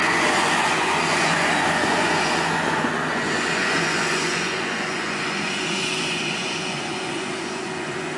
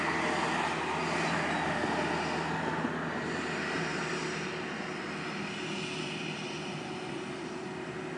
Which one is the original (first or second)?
second